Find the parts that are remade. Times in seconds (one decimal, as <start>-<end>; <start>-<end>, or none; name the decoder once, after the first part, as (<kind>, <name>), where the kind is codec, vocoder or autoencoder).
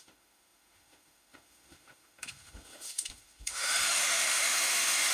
0.0-5.1 (autoencoder, DAC-VAE)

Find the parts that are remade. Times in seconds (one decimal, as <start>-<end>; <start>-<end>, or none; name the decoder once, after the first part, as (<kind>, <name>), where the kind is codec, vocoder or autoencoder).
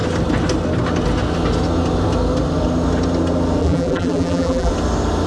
3.6-4.7 (vocoder, BigVGAN v2)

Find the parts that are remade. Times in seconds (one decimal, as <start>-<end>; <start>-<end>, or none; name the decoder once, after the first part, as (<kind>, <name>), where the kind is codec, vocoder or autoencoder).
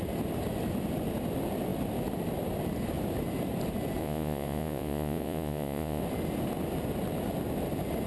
4.0-6.0 (vocoder, Vocos)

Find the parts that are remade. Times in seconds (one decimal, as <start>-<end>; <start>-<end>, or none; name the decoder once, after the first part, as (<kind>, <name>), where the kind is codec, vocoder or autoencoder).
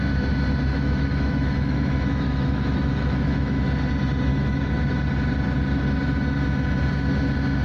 0.7-3.6 (autoencoder, DAC-VAE); 4.3-4.8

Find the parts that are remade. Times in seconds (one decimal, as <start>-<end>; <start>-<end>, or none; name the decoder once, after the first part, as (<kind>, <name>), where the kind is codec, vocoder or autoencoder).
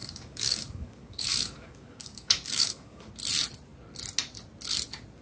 0.0-3.1 (codec, DAC)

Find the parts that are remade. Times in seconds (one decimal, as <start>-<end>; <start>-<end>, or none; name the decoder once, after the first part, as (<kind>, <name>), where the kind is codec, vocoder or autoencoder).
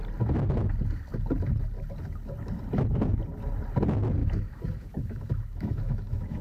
4.2-6.4 (autoencoder, DAC-VAE)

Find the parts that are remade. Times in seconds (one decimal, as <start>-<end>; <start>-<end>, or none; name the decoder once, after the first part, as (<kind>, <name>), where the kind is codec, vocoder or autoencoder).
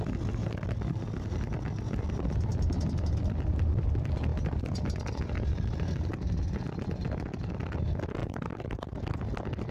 8.2-9.2 (vocoder, BigVGAN v2)